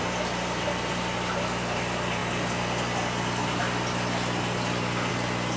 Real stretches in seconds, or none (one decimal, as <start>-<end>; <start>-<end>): 0.0-5.6